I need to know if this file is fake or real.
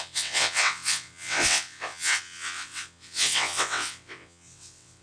fake